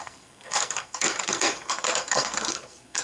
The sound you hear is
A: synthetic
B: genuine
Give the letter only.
A